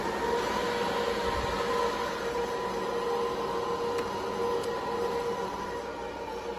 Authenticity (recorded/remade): recorded